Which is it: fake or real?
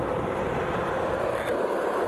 real